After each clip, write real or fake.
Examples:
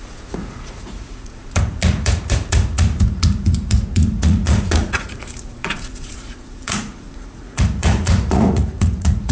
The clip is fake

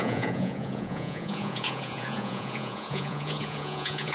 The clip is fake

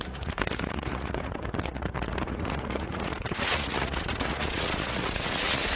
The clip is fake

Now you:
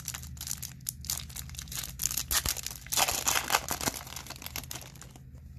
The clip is real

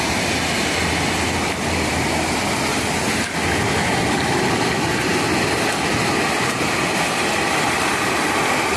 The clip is real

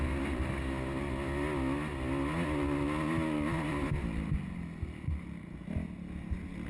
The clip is real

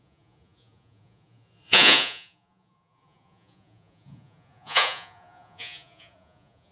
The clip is fake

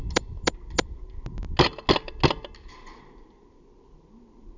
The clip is real